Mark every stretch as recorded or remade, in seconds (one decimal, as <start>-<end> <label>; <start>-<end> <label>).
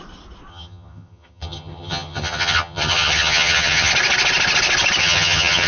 0.0-0.5 recorded; 0.5-3.9 remade; 3.9-5.0 recorded; 5.0-5.7 remade